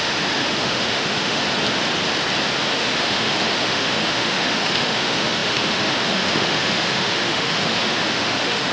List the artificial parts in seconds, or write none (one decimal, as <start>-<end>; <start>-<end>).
0.0-1.4; 2.7-8.7